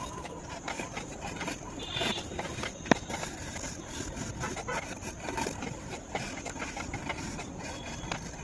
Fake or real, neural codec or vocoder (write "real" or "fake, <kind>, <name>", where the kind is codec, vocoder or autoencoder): real